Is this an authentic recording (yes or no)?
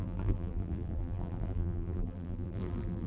no